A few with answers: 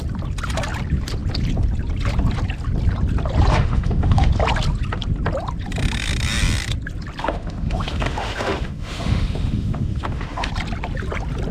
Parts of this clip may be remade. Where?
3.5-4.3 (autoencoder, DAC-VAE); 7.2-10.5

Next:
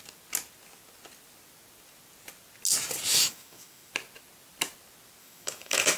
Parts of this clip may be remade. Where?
3.2-3.9 (autoencoder, DAC-VAE); 5.2-6.0